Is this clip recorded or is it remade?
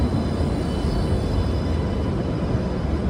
recorded